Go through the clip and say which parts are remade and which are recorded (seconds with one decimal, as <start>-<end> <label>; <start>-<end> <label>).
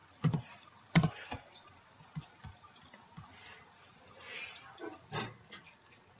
0.0-3.6 remade; 3.6-6.2 recorded